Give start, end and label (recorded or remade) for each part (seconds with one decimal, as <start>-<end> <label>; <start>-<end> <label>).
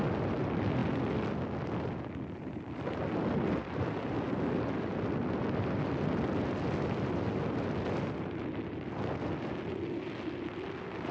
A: 0.0-11.1 recorded